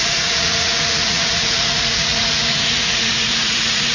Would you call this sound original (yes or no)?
no